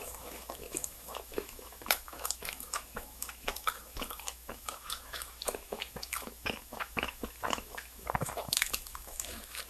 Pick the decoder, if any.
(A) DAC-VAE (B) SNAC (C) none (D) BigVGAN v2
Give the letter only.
A